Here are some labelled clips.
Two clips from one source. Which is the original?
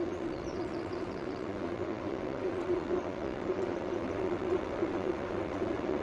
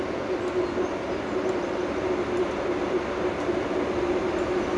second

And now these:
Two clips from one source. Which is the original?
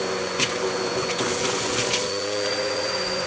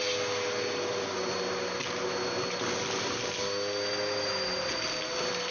second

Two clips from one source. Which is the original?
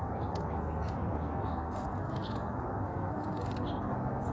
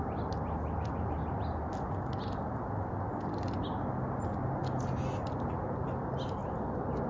second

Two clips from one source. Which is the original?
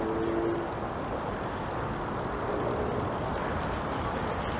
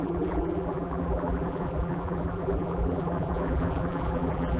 first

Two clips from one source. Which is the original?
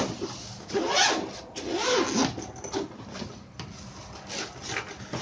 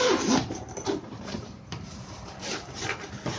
first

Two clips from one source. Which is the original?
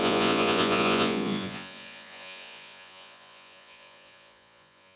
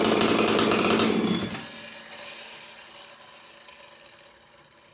second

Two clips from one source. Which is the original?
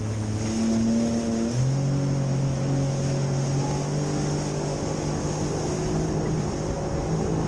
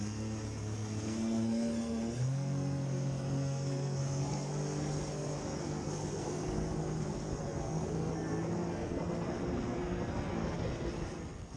first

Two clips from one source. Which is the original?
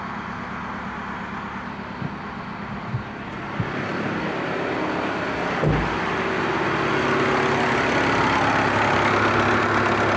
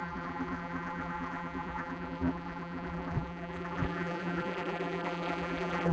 first